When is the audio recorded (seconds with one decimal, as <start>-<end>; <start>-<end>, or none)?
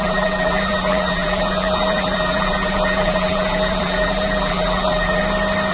5.2-5.7